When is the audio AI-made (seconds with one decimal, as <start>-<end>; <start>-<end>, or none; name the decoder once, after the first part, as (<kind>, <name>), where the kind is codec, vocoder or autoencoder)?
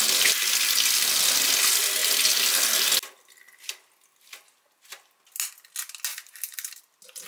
6.1-6.8 (vocoder, BigVGAN v2)